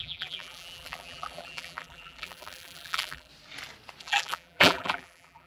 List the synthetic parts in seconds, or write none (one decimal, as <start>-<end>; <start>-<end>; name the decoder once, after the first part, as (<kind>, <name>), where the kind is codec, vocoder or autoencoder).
0.0-3.3 (vocoder, BigVGAN v2); 4.0-5.5